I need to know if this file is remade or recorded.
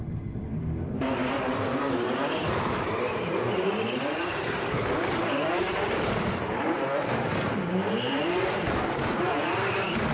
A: remade